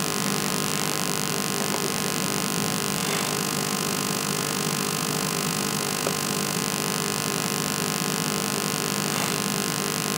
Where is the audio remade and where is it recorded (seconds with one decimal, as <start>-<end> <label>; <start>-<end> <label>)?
0.0-3.0 recorded; 3.0-6.6 remade; 6.6-10.2 recorded